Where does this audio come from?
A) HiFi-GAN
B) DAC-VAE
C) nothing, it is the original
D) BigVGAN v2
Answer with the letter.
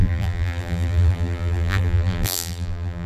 D